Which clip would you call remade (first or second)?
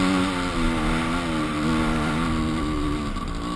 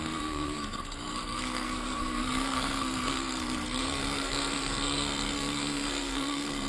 second